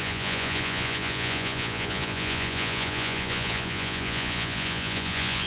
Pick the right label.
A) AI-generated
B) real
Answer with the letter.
A